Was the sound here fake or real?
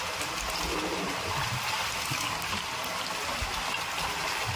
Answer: real